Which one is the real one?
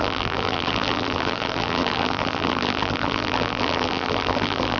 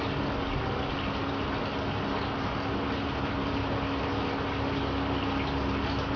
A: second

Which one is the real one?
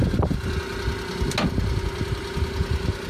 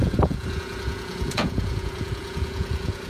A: first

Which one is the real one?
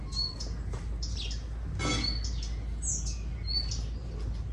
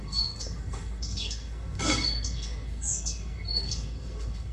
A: first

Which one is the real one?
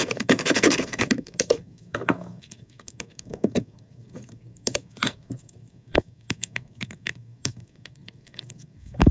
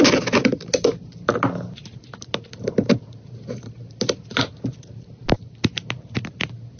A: second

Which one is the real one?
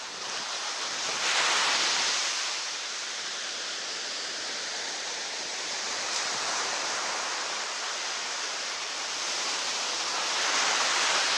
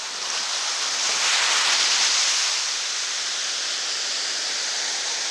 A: second